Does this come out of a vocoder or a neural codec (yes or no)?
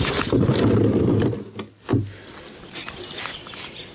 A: no